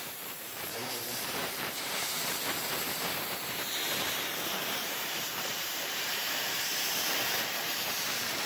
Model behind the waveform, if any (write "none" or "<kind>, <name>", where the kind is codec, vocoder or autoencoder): vocoder, BigVGAN v2